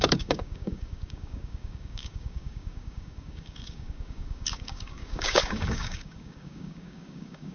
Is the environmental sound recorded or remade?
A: remade